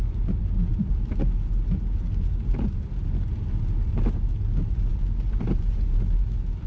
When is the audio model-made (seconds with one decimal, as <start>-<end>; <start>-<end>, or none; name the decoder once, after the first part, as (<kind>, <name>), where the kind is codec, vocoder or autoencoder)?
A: none